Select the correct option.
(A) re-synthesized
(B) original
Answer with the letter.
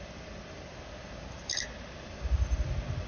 B